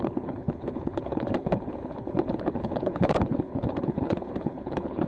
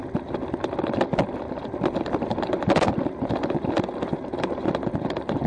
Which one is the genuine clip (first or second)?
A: second